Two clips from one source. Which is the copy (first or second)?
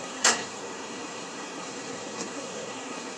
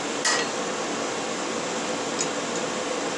first